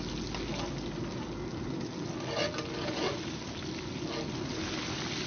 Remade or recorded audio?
recorded